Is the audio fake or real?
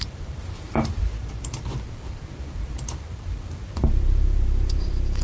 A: fake